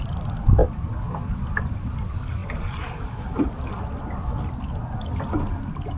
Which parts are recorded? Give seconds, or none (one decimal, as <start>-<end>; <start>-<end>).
0.6-1.5

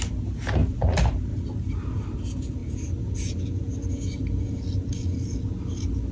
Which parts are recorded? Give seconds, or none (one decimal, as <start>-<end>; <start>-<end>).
0.0-6.1

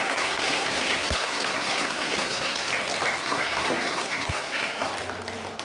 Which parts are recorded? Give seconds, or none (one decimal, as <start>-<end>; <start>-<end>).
2.7-3.2; 4.9-5.6

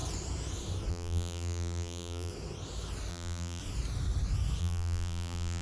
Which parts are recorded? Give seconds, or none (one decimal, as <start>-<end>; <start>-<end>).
0.0-0.9; 2.3-3.1; 3.6-4.6

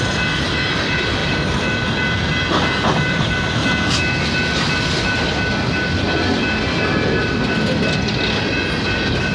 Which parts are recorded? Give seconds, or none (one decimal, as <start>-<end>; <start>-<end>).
0.0-9.3